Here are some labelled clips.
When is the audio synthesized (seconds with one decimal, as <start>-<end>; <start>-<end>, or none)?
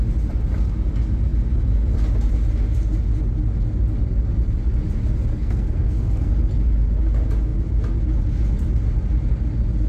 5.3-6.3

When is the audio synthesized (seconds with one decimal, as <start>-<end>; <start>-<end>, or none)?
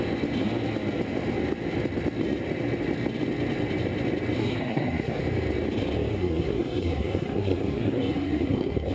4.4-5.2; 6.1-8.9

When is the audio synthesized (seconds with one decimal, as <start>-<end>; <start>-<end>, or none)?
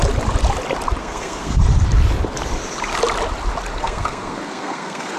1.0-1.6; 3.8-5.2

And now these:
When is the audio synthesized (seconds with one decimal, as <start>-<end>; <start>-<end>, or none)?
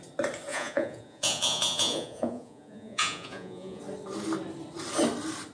0.5-3.8